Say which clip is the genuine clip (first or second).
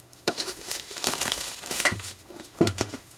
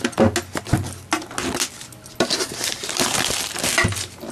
second